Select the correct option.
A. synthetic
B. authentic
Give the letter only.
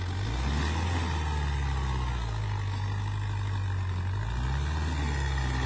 B